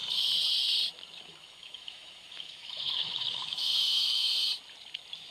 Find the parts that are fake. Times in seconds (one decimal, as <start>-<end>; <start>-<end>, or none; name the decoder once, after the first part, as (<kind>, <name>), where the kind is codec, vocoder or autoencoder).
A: 1.3-4.5 (autoencoder, DAC-VAE)

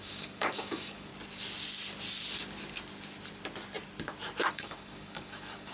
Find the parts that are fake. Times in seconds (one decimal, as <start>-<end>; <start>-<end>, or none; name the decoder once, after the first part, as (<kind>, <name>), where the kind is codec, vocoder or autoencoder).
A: 0.0-1.1 (codec, DAC); 4.5-5.7

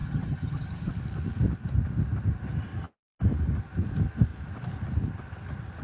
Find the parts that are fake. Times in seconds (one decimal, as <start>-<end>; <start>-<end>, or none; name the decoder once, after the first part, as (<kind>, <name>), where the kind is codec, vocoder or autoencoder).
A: 0.0-0.9 (vocoder, HiFi-GAN)

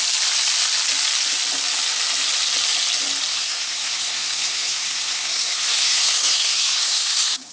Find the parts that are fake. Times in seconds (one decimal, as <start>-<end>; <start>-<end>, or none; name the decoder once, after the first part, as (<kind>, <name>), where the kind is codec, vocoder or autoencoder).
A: 3.3-7.5 (codec, SNAC)

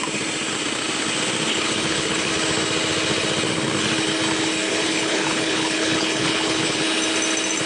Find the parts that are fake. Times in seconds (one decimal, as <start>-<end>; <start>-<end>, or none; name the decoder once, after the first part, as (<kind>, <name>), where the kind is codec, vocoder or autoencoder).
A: 1.5-2.3 (codec, HILCodec); 4.7-6.8